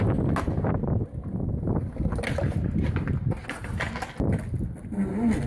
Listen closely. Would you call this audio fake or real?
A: real